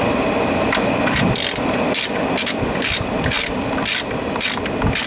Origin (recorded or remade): recorded